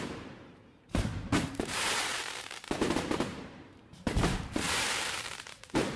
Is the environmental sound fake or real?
fake